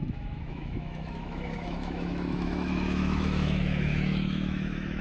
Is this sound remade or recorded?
remade